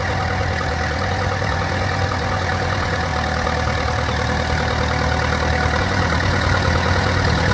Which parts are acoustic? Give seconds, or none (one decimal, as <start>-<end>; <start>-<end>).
3.1-5.8